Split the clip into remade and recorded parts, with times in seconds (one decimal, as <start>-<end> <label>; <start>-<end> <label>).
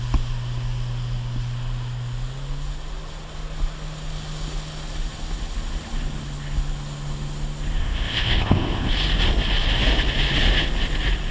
0.0-7.8 recorded; 7.8-8.9 remade; 8.9-11.3 recorded